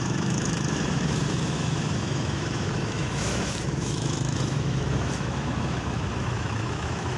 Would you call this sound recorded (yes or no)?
no